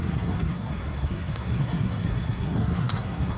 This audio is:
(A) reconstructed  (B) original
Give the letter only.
A